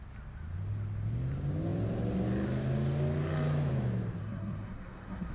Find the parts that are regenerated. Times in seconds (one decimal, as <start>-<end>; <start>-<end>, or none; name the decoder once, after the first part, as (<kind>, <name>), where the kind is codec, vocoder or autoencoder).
4.2-5.3 (codec, SNAC)

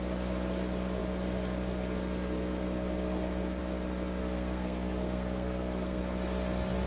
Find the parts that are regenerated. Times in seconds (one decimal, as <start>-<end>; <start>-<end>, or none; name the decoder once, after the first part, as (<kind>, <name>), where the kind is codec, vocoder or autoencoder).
4.2-6.0 (codec, SNAC)